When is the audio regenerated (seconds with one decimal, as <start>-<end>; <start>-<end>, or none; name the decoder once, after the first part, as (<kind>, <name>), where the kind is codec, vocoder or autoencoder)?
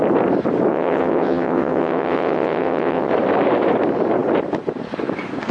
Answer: 0.7-3.1 (vocoder, WaveNeXt)